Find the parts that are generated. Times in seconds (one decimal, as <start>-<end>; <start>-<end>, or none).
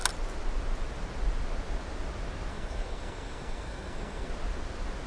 2.5-4.3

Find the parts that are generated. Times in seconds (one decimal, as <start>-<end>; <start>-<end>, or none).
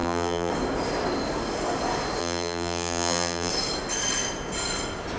0.0-0.5; 2.2-3.5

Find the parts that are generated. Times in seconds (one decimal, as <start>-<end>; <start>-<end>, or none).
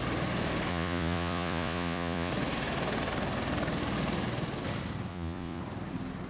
0.7-2.3; 5.1-5.6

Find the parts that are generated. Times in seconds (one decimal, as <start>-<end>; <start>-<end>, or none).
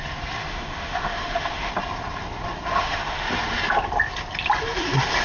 0.4-1.7; 2.7-3.3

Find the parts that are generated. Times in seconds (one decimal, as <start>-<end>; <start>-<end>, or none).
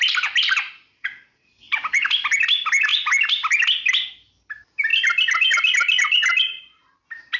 0.0-6.8